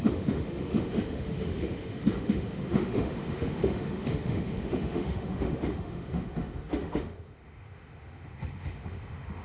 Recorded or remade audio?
remade